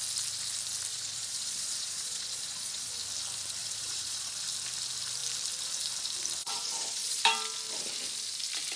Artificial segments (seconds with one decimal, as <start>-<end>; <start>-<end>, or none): 0.9-2.9; 3.6-4.3; 6.4-7.2